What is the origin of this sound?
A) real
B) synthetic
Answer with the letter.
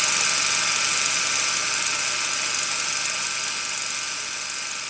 A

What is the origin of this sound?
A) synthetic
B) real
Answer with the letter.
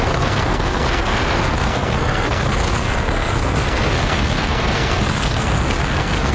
A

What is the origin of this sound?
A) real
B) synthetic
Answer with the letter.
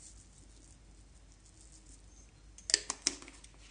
A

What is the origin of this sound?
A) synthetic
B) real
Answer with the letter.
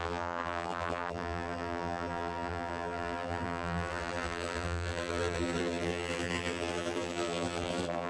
A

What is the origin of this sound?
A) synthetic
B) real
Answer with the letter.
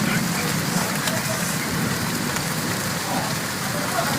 A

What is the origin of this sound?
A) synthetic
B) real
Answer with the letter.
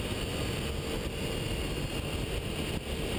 B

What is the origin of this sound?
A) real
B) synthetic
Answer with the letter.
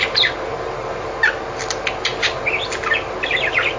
A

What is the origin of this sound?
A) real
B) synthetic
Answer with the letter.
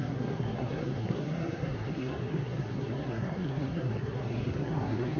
B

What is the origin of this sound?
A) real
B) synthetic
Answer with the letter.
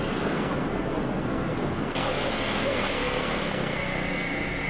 B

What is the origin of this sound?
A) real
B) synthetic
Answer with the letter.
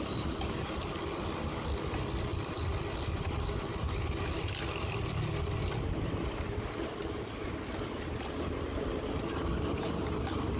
A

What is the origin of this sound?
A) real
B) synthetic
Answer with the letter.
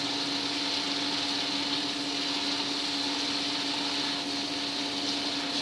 A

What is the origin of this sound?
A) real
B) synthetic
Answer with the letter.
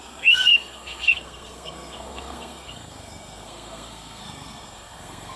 B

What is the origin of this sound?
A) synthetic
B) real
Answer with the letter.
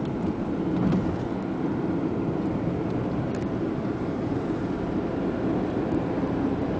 B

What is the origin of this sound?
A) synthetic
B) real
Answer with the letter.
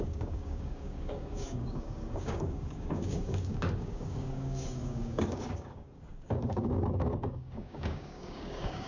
A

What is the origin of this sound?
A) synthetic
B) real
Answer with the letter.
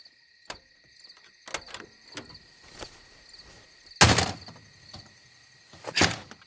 B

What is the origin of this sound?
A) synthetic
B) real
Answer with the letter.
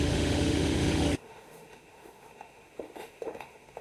A